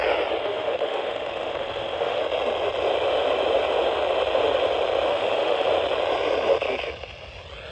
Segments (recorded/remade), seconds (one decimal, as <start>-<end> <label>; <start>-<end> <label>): 0.0-0.4 recorded; 0.4-2.2 remade; 2.2-5.1 recorded; 5.1-5.7 remade; 5.7-7.7 recorded

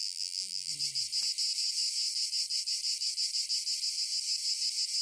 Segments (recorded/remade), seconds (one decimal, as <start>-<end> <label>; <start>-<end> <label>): 0.0-0.7 remade; 0.7-5.0 recorded

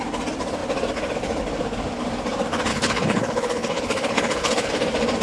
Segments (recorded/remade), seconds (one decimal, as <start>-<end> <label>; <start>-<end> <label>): 0.0-2.7 recorded; 2.7-4.7 remade; 4.7-5.2 recorded

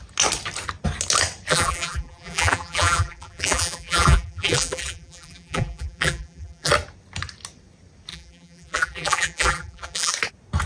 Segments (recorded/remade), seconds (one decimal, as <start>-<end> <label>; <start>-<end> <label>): 0.0-1.5 recorded; 1.5-6.7 remade; 6.7-8.1 recorded; 8.1-10.1 remade; 10.1-10.7 recorded

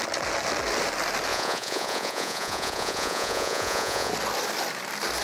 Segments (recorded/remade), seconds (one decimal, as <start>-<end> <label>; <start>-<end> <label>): 0.0-1.3 recorded; 1.3-4.1 remade; 4.1-5.2 recorded

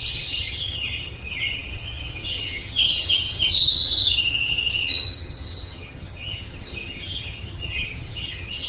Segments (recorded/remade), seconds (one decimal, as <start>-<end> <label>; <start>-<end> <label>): 0.0-8.7 remade